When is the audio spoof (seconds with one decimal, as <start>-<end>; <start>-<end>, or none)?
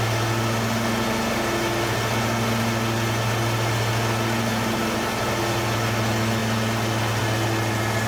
4.5-5.1